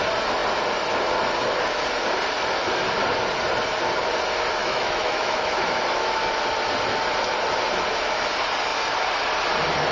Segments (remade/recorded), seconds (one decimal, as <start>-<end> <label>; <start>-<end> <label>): 0.0-4.6 recorded; 4.6-6.2 remade; 6.2-9.9 recorded